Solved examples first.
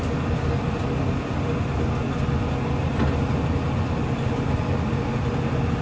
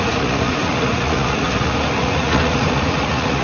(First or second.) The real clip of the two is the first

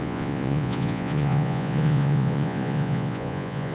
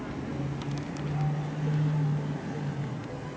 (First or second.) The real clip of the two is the second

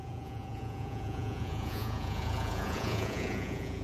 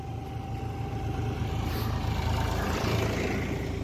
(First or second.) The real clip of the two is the second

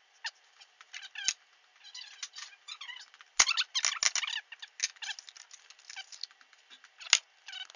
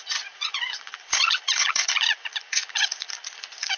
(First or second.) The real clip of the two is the first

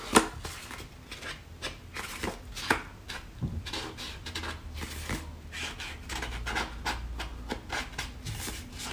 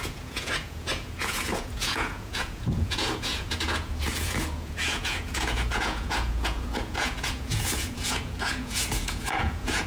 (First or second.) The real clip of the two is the first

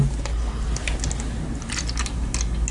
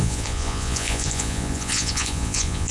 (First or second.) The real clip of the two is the first